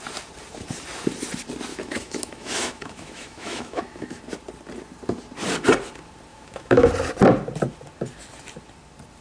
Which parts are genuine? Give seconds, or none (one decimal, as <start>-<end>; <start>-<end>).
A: 0.0-1.7; 4.2-6.3; 6.9-9.2